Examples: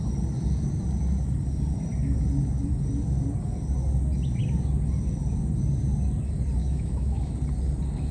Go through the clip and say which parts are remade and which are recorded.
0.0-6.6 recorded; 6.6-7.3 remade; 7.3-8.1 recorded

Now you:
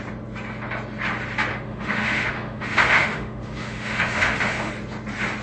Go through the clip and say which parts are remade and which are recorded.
0.0-1.5 recorded; 1.5-4.7 remade; 4.7-5.4 recorded

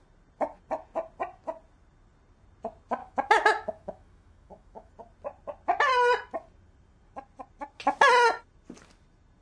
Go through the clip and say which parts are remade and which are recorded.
0.0-3.0 recorded; 3.0-4.9 remade; 4.9-9.4 recorded

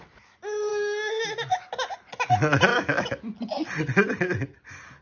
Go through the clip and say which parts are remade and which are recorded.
0.0-2.7 recorded; 2.7-3.2 remade; 3.2-5.0 recorded

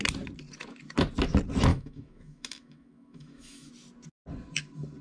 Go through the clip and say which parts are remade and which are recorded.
0.0-1.7 recorded; 1.7-3.7 remade; 3.7-5.0 recorded

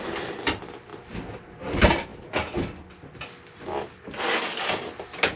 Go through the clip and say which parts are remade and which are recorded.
0.0-5.4 recorded